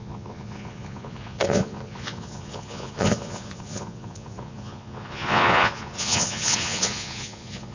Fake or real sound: fake